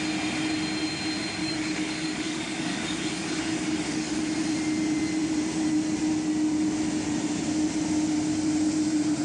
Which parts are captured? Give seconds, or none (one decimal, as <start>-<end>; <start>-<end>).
0.0-1.4; 4.2-9.2